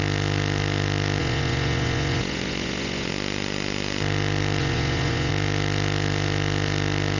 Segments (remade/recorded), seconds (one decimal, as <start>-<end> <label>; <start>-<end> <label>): 0.0-1.2 recorded; 1.2-3.1 remade; 3.1-4.6 recorded; 4.6-5.3 remade; 5.3-7.2 recorded